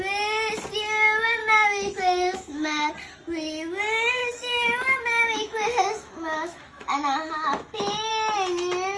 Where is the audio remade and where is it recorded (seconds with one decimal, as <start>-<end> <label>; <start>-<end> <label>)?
0.0-1.4 recorded; 1.4-2.9 remade; 2.9-4.2 recorded; 4.2-8.1 remade; 8.1-9.0 recorded